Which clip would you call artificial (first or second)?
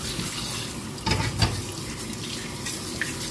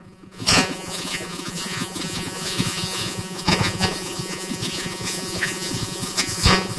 second